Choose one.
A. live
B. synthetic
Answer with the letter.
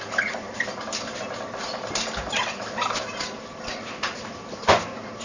A